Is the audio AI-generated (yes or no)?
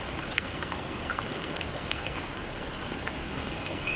yes